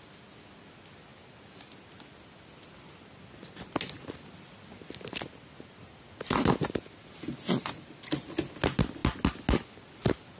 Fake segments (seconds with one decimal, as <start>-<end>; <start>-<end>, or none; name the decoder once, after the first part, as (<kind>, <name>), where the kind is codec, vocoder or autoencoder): none